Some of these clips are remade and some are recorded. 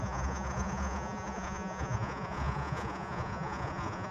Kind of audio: remade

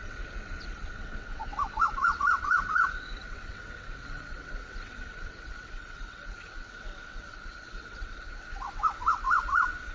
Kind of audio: remade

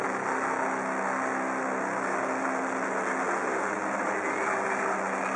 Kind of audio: recorded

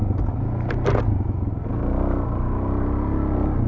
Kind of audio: recorded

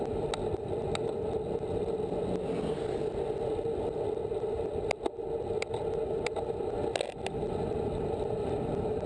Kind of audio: recorded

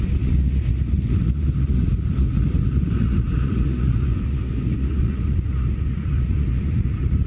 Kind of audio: remade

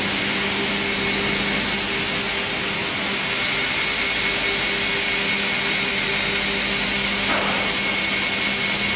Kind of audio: recorded